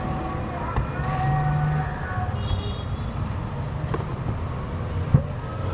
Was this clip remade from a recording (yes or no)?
no